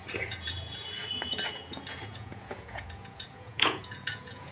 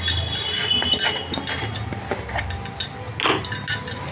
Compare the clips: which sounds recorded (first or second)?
second